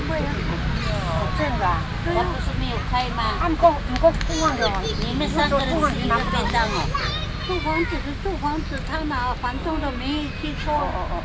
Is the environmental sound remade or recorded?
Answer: recorded